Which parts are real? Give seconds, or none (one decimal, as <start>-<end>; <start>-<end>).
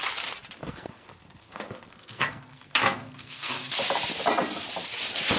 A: 0.0-0.6; 3.7-5.4